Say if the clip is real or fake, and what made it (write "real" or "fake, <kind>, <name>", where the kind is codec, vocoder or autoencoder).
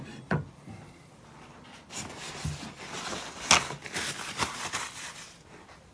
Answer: real